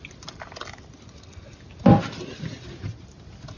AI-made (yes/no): no